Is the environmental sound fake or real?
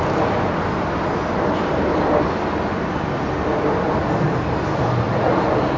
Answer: real